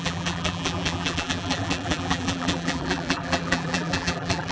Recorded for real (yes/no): no